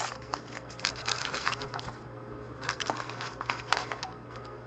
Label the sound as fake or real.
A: fake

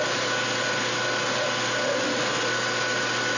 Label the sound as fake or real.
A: real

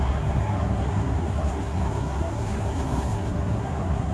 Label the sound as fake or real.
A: fake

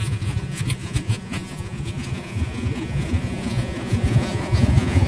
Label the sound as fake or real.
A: fake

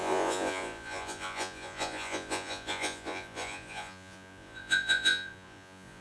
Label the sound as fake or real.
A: fake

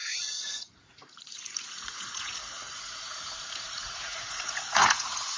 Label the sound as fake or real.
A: fake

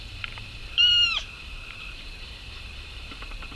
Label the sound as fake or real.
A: fake